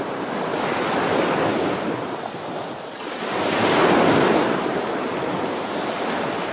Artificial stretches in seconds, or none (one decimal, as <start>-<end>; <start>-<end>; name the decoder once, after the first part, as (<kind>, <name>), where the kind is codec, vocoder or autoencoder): none